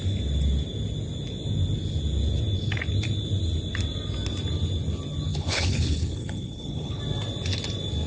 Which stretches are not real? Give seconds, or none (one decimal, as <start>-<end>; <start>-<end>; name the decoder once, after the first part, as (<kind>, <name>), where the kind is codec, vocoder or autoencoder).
5.3-7.0 (codec, HILCodec)